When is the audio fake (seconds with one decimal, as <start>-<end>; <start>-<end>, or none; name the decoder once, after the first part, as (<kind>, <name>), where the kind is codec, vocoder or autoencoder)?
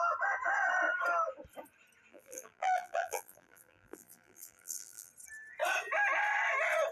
2.1-5.1 (vocoder, BigVGAN v2)